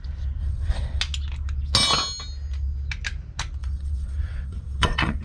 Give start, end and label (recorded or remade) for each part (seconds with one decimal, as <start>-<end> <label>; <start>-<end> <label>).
0.0-0.4 recorded; 0.4-1.0 remade; 1.0-3.6 recorded; 3.6-5.2 remade